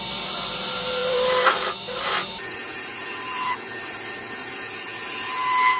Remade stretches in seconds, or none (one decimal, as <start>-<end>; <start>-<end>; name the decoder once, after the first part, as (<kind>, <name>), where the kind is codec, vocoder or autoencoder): 1.0-4.5 (vocoder, BigVGAN v2)